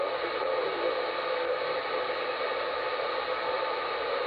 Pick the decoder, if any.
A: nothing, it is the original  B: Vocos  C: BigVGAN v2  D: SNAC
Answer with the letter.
A